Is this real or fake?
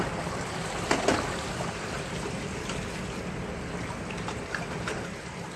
real